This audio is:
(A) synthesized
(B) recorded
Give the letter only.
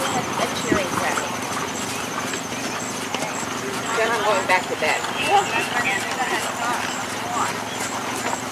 B